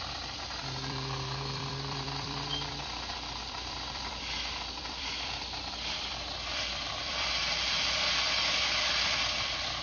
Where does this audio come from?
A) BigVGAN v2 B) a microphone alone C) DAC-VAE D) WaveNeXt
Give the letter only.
A